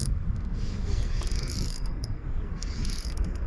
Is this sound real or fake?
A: fake